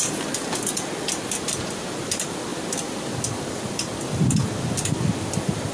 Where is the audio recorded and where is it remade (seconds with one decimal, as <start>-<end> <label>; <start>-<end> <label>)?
0.0-5.7 recorded